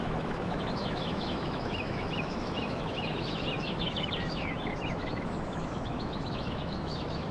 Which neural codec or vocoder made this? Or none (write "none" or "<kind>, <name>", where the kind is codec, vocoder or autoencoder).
autoencoder, DAC-VAE